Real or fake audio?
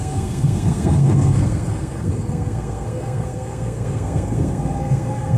fake